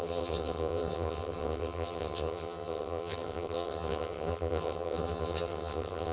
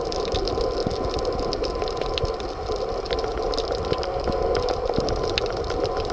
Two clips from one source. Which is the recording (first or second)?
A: second